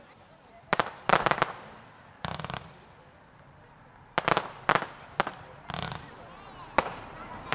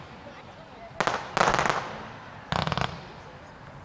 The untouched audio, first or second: second